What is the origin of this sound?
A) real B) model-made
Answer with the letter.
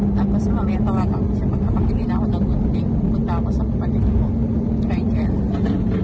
A